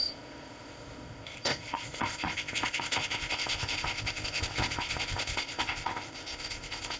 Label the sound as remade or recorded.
remade